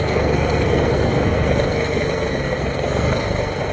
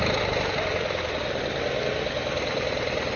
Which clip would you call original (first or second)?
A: second